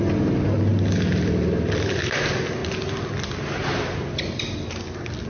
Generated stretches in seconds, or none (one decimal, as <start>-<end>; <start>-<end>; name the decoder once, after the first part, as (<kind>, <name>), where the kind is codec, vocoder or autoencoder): none